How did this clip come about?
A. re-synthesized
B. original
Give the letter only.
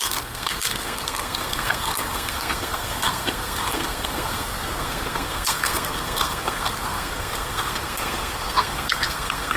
A